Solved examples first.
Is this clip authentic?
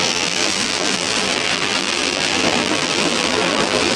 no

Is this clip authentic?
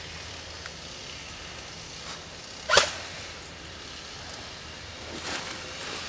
yes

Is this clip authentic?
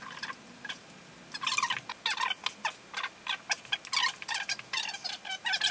yes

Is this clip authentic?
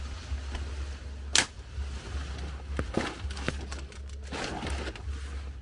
yes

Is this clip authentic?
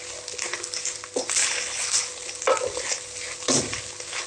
yes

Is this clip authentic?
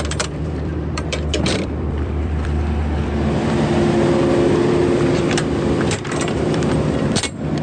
no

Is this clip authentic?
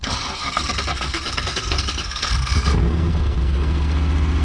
no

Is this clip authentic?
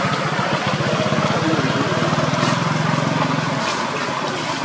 yes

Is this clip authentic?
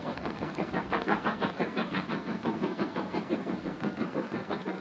no